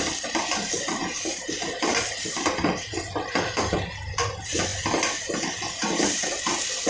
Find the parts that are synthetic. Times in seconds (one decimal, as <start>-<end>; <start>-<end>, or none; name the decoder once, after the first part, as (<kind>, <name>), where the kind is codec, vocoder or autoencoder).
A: none